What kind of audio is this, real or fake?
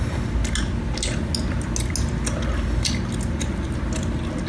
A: real